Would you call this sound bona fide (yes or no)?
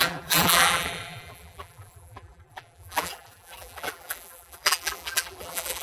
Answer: no